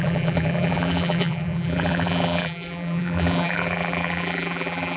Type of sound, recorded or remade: remade